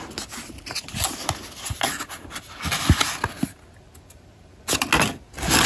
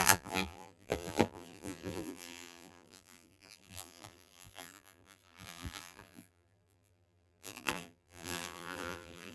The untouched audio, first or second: first